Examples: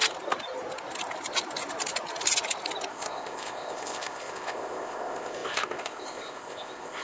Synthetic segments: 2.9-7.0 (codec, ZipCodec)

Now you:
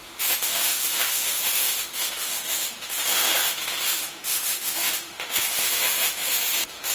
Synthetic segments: 0.0-6.9 (autoencoder, DAC-VAE)

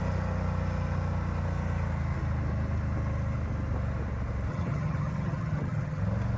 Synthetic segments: 4.5-6.0 (vocoder, HiFi-GAN)

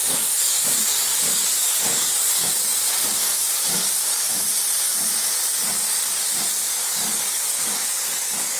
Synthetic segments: 0.0-4.3 (codec, DAC); 5.7-6.2; 6.8-8.6

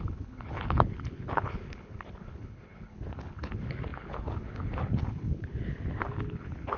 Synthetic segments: 0.0-6.8 (codec, HILCodec)

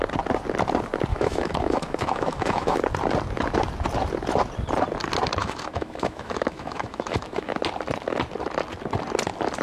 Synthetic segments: 1.1-2.8 (autoencoder, DAC-VAE); 5.4-7.5

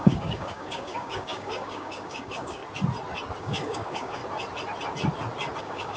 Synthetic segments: 0.0-2.6 (codec, DAC); 3.4-4.2; 5.6-6.0